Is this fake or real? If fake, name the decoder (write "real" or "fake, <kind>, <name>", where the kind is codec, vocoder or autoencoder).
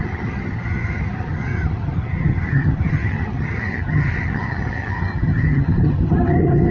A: fake, vocoder, HiFi-GAN